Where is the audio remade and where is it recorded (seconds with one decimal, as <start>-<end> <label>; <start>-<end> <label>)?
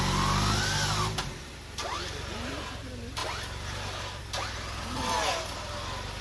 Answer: 0.0-6.2 recorded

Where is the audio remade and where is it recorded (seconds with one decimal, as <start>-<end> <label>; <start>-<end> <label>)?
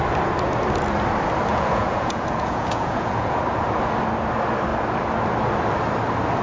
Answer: 0.0-1.5 recorded; 1.5-3.4 remade; 3.4-6.4 recorded